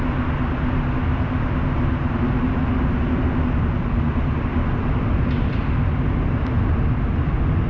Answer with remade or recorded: recorded